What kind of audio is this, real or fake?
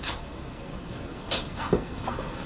fake